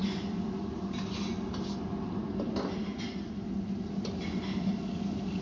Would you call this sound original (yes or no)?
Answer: yes